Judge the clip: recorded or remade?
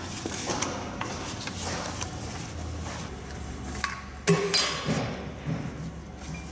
recorded